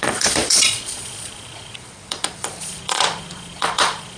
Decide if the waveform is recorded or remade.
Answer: remade